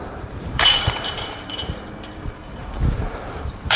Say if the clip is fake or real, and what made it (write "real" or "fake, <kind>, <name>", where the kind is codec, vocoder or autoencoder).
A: fake, vocoder, BigVGAN v2